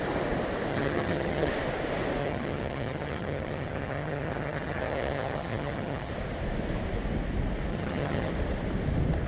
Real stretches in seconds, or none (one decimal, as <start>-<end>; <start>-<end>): 0.0-0.7; 1.5-2.2; 6.1-7.7; 8.3-9.3